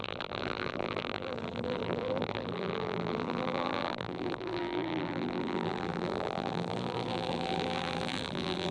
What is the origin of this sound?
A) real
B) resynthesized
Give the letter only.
B